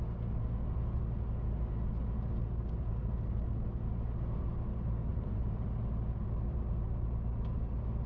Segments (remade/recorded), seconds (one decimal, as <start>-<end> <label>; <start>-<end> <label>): 0.0-5.1 recorded; 5.1-5.7 remade; 5.7-8.1 recorded